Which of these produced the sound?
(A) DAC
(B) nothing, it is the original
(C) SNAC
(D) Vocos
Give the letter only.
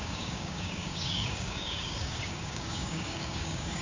A